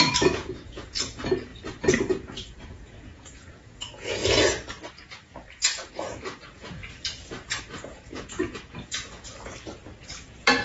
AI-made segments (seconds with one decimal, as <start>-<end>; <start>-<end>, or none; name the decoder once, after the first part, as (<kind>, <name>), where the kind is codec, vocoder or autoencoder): 0.0-1.5 (vocoder, Vocos); 2.1-4.2; 5.1-6.8; 7.6-9.3; 10.0-10.6